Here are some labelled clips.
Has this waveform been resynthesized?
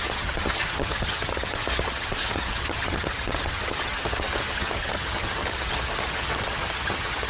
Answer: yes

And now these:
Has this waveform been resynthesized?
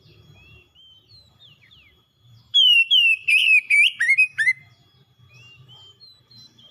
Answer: yes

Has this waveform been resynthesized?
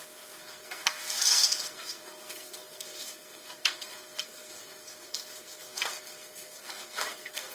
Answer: yes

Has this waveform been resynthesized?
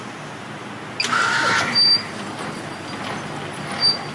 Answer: no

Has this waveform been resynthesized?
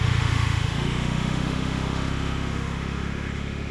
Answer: yes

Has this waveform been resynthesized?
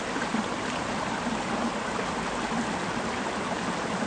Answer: no